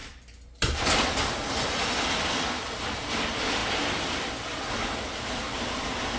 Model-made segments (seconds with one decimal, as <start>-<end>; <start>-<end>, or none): none